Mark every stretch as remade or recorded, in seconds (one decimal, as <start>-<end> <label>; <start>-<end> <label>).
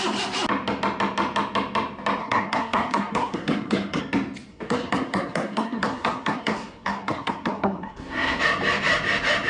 0.0-2.2 recorded; 2.2-4.0 remade; 4.0-4.5 recorded; 4.5-8.4 remade; 8.4-9.5 recorded